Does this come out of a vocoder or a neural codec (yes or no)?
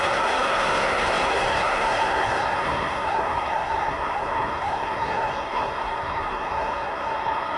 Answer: yes